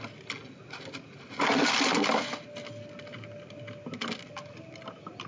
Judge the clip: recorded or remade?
recorded